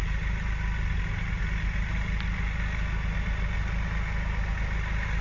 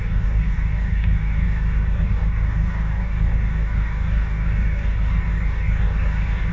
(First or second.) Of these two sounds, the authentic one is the first